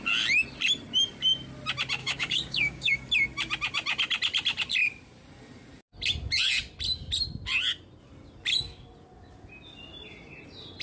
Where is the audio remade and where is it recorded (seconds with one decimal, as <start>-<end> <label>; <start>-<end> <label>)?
0.0-2.0 recorded; 2.0-2.9 remade; 2.9-10.8 recorded